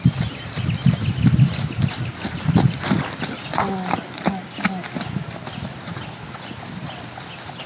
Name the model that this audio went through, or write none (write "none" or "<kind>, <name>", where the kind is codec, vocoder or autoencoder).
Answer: none